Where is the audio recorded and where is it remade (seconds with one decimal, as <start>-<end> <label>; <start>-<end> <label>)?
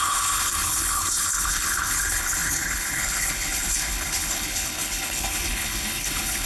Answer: 0.0-6.5 remade